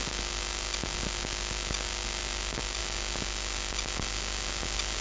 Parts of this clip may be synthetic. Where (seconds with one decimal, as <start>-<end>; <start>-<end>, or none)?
none

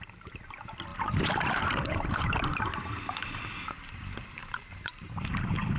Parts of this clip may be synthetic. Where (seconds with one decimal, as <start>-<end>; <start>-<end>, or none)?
0.9-2.4; 4.4-5.2